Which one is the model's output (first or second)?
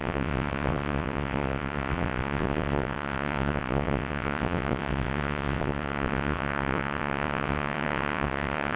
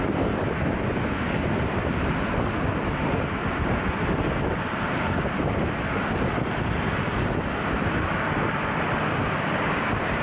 first